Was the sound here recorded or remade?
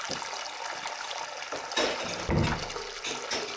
recorded